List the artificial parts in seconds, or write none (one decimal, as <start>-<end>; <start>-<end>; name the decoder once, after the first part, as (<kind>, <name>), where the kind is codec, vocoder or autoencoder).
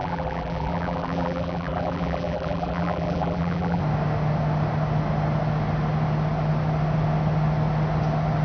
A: 0.0-3.8 (vocoder, BigVGAN v2)